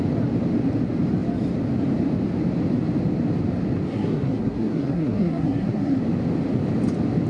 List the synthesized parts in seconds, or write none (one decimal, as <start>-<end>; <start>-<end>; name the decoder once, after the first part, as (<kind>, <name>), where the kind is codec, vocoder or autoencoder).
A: 3.9-6.0 (codec, SNAC)